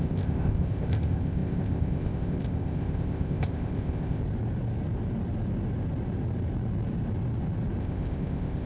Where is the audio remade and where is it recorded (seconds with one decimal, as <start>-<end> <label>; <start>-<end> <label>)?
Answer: 0.0-4.2 remade; 4.2-7.8 recorded; 7.8-8.7 remade